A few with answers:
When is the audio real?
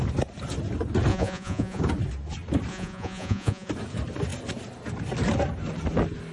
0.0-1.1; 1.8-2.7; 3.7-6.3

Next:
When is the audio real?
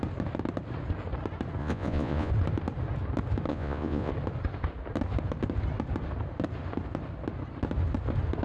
0.0-1.6; 2.3-3.5; 4.1-8.4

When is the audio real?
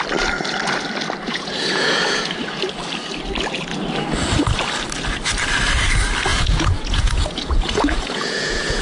0.0-1.2; 2.3-6.3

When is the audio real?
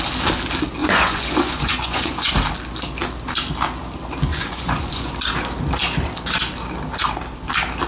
0.0-0.8; 2.3-4.3; 5.1-7.9